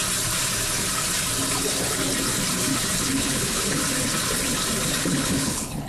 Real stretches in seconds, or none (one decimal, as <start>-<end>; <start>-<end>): 0.0-3.0; 3.8-4.9